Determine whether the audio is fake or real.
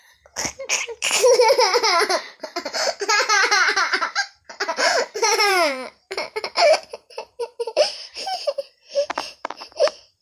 fake